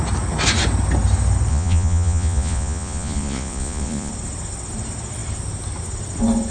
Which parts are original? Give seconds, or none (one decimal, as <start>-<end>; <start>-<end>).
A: 0.0-1.5; 4.1-6.5